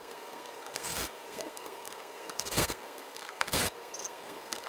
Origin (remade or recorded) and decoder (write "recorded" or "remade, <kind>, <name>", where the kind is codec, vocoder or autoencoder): remade, codec, SNAC